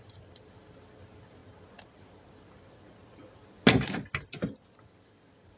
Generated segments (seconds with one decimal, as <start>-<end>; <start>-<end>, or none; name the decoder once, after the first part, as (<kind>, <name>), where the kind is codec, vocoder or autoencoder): 0.0-1.4 (vocoder, BigVGAN v2); 4.8-5.6